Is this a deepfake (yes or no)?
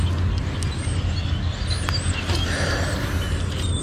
no